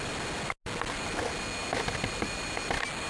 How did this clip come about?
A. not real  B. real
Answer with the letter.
B